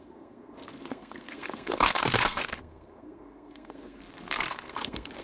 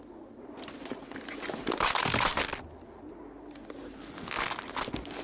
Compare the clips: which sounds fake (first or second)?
first